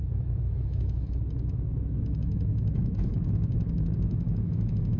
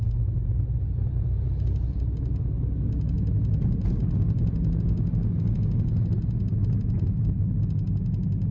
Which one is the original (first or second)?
second